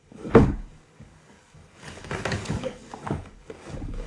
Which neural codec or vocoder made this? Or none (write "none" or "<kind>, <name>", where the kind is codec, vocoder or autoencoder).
codec, DAC